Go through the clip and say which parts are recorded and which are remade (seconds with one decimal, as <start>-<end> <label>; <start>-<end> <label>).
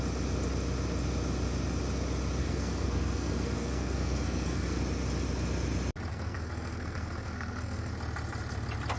0.0-2.4 recorded; 2.4-4.8 remade; 4.8-6.1 recorded; 6.1-7.9 remade; 7.9-9.0 recorded